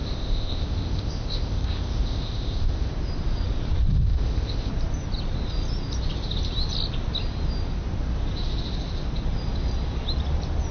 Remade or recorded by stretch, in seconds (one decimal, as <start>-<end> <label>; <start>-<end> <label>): 0.0-2.9 remade; 2.9-3.9 recorded; 3.9-4.7 remade; 4.7-10.7 recorded